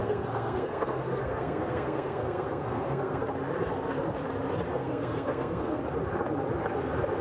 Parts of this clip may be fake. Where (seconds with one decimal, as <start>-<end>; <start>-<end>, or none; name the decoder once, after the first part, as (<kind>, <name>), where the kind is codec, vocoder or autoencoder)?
0.0-3.2 (codec, SNAC); 4.7-5.8

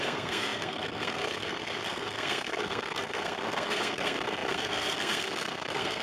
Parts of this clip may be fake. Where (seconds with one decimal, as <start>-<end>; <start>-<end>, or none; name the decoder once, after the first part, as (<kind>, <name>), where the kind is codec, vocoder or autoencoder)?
0.0-6.0 (codec, SNAC)

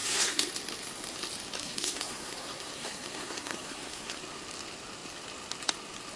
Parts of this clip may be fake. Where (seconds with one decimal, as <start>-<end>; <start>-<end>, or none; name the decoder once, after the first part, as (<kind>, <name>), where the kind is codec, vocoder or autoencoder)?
0.0-0.5 (codec, SNAC); 1.6-4.2

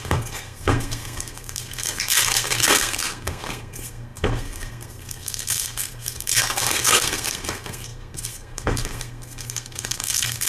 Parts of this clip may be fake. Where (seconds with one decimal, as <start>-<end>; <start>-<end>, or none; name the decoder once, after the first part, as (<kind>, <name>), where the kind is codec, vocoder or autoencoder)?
0.0-10.5 (codec, SNAC)